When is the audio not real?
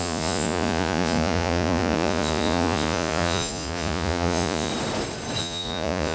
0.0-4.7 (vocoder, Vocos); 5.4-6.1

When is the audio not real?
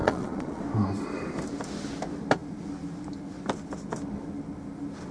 0.0-0.6 (vocoder, Vocos)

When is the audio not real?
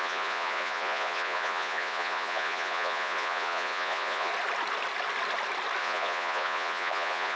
0.0-4.3 (vocoder, Vocos); 5.8-7.4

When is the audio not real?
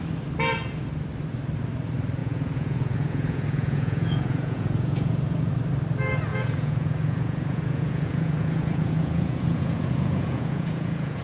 2.2-5.5 (vocoder, Vocos); 6.3-11.2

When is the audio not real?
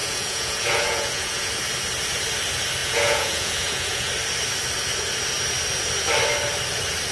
0.0-1.4 (vocoder, Vocos); 2.8-4.1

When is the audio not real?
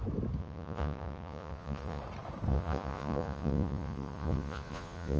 0.4-2.0 (vocoder, Vocos); 2.5-5.2